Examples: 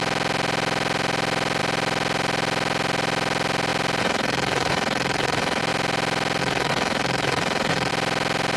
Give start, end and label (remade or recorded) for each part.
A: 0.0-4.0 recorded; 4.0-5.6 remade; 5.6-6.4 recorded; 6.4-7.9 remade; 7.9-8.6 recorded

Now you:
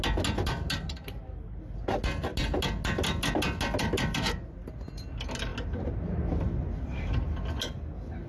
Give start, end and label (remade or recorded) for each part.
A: 0.0-8.3 recorded

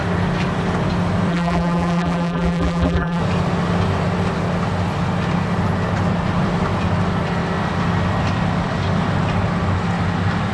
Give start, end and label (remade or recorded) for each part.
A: 0.0-1.3 recorded; 1.3-3.2 remade; 3.2-10.5 recorded

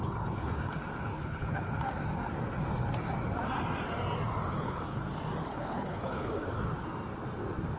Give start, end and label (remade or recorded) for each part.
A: 0.0-1.1 recorded; 1.1-1.7 remade; 1.7-4.5 recorded; 4.5-5.0 remade; 5.0-5.5 recorded; 5.5-6.3 remade; 6.3-7.8 recorded

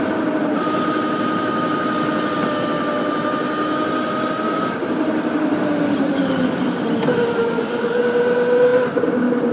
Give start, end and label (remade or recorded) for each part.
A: 0.0-6.1 recorded; 6.1-6.6 remade; 6.6-7.4 recorded; 7.4-8.0 remade; 8.0-9.5 recorded

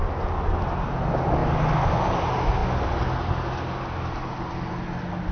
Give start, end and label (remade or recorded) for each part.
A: 0.0-5.3 recorded